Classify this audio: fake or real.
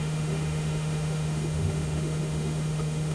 fake